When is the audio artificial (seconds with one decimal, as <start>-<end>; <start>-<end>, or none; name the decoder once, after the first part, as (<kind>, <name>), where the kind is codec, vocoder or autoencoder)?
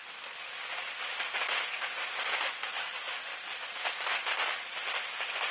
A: none